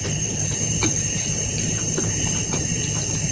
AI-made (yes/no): yes